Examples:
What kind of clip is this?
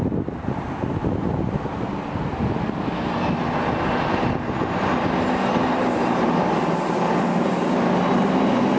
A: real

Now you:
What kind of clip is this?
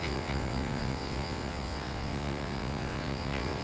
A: fake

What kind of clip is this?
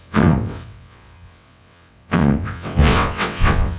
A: fake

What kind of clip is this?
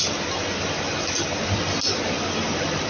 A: real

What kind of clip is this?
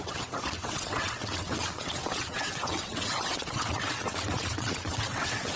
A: fake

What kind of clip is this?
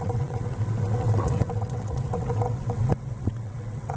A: fake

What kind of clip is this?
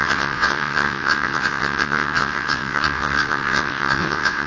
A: fake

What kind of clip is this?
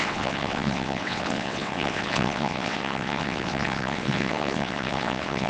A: fake